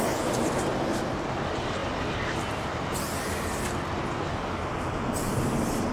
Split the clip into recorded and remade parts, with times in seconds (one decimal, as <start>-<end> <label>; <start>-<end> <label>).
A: 0.0-5.9 recorded

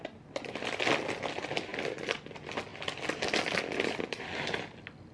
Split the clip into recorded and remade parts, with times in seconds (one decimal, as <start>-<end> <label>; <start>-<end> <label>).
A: 0.0-1.7 recorded; 1.7-2.3 remade; 2.3-5.1 recorded

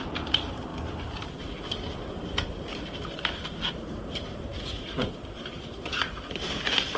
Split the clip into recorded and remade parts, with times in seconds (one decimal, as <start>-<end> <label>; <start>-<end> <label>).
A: 0.0-0.7 remade; 0.7-3.7 recorded; 3.7-7.0 remade

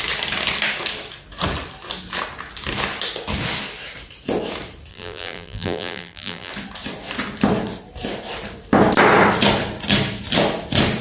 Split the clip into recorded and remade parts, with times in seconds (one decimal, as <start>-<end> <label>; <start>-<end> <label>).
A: 0.0-4.9 recorded; 4.9-6.5 remade; 6.5-11.0 recorded

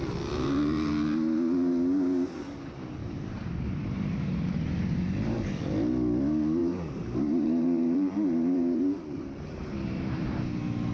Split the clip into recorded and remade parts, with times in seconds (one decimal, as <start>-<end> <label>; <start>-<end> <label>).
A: 0.0-3.0 recorded; 3.0-5.6 remade; 5.6-6.6 recorded; 6.6-10.4 remade; 10.4-10.9 recorded

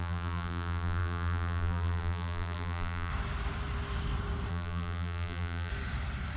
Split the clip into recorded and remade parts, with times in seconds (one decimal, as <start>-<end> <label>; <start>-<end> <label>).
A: 0.0-3.1 remade; 3.1-4.5 recorded; 4.5-5.7 remade; 5.7-6.4 recorded